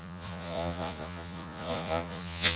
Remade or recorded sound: remade